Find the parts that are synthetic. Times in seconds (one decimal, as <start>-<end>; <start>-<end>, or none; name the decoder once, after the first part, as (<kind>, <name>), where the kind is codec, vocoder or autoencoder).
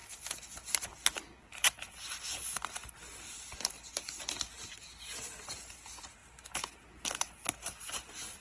0.0-6.2 (vocoder, BigVGAN v2); 7.3-8.4